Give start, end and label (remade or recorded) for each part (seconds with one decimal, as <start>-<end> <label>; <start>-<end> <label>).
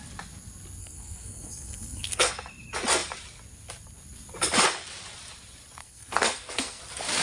0.0-0.8 recorded; 0.8-2.3 remade; 2.3-5.8 recorded; 5.8-6.8 remade; 6.8-7.2 recorded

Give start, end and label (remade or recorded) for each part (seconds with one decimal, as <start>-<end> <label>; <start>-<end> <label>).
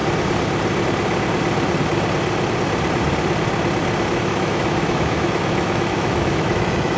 0.0-4.2 recorded; 4.2-7.0 remade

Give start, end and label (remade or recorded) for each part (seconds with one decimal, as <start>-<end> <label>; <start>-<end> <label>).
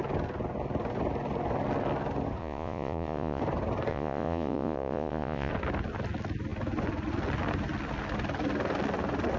0.0-2.4 recorded; 2.4-3.4 remade; 3.4-3.9 recorded; 3.9-5.5 remade; 5.5-9.4 recorded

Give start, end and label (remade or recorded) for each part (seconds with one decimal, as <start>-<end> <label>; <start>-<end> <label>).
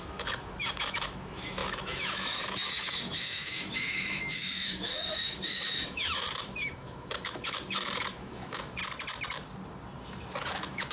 0.0-8.8 remade; 8.8-10.5 recorded; 10.5-10.9 remade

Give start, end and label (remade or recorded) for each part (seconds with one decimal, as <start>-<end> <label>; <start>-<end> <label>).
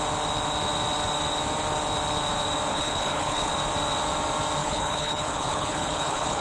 0.0-2.7 recorded; 2.7-3.5 remade; 3.5-4.6 recorded; 4.6-6.4 remade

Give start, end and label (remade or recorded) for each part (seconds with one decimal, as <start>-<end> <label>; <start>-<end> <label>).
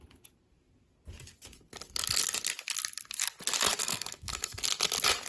0.0-3.8 recorded; 3.8-4.6 remade; 4.6-5.3 recorded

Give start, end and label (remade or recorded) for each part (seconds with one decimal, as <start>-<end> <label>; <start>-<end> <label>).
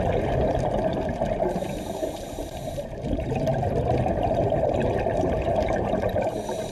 0.0-0.9 remade; 0.9-1.5 recorded; 1.5-6.7 remade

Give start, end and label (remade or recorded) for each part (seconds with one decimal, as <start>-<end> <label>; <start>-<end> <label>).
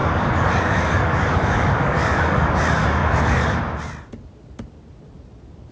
0.0-2.6 remade; 2.6-3.0 recorded; 3.0-3.6 remade; 3.6-5.7 recorded